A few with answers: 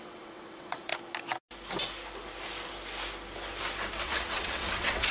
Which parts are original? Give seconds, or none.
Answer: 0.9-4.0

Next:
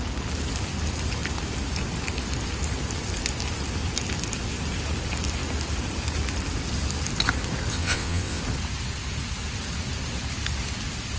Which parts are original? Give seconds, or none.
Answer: 0.0-7.7; 8.4-11.2

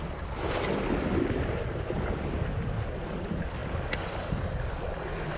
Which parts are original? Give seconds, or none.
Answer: 0.0-5.4

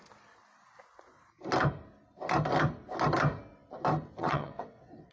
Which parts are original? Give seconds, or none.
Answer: 0.0-4.2

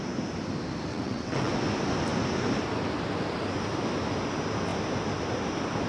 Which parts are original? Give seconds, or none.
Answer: 0.0-0.9; 1.5-5.9

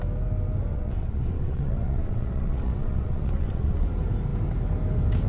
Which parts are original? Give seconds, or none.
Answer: 0.0-0.7; 3.9-5.3

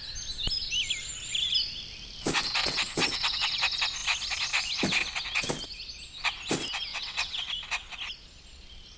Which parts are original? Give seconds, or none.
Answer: 0.0-2.6; 3.5-6.9; 7.5-9.0